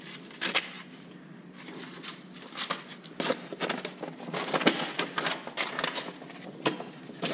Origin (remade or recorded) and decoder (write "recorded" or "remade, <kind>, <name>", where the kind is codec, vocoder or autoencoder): recorded